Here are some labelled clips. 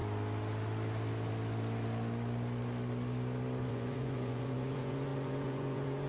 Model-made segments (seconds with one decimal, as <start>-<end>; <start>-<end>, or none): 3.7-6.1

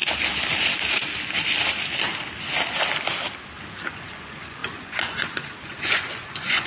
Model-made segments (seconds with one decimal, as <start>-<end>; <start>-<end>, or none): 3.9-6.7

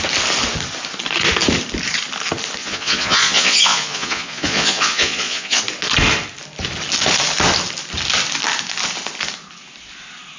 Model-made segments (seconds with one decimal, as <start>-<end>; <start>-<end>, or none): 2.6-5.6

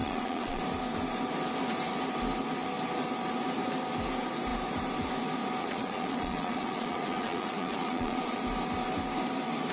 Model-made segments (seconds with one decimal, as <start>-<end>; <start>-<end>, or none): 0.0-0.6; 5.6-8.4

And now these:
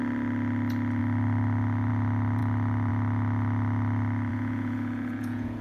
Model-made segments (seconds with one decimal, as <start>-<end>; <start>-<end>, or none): 4.3-5.6

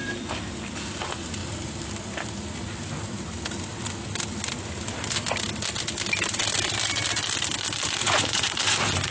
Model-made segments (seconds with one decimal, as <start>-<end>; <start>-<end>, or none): 8.0-9.1

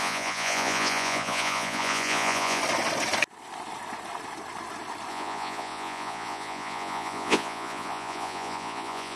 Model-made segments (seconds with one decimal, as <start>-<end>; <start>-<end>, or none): 0.0-2.6; 5.1-9.2